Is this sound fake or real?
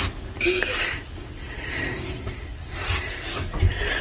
real